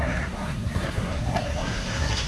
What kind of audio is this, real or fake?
fake